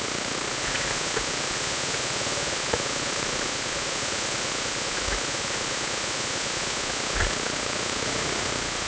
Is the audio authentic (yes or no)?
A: no